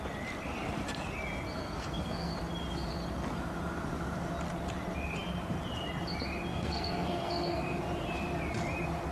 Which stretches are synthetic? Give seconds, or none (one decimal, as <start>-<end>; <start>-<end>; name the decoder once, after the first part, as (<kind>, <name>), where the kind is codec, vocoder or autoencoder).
1.6-2.3 (codec, SNAC); 6.5-7.8